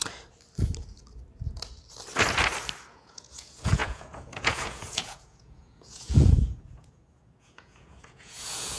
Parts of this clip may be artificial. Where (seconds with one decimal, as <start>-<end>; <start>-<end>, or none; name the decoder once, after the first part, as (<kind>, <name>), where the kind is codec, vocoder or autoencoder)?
2.9-8.8 (vocoder, Vocos)